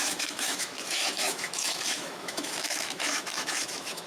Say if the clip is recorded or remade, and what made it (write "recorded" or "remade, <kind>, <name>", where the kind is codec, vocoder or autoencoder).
remade, autoencoder, DAC-VAE